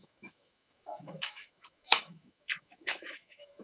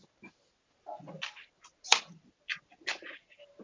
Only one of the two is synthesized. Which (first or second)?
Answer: first